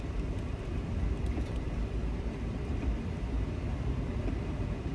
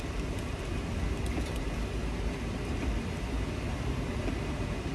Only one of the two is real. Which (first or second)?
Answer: second